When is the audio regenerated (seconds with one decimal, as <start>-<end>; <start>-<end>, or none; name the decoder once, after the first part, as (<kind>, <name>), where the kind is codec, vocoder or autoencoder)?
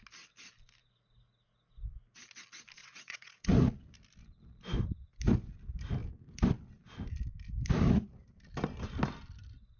2.8-3.5 (vocoder, WaveNeXt)